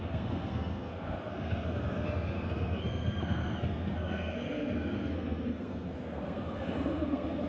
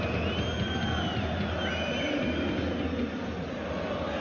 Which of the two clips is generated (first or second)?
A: first